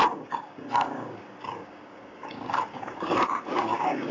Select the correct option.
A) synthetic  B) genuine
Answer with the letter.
A